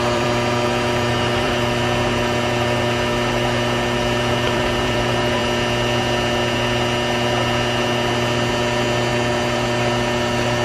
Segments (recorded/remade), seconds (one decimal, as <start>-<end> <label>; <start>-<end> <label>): 0.0-5.4 remade; 5.4-9.1 recorded; 9.1-10.6 remade